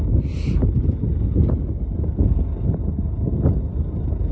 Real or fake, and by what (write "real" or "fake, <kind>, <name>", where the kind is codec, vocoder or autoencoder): real